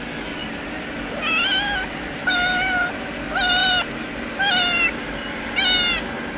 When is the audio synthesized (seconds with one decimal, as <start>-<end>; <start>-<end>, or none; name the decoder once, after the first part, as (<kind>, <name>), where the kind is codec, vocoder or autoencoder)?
none